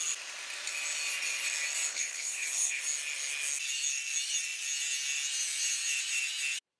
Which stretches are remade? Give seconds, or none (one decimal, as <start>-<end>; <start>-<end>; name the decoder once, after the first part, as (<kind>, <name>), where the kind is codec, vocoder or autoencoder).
1.9-2.8 (codec, HILCodec)